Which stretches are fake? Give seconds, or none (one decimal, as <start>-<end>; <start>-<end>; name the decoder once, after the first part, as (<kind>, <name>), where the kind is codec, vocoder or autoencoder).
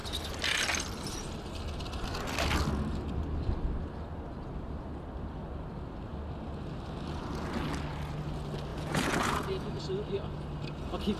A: 8.7-9.8 (vocoder, Vocos)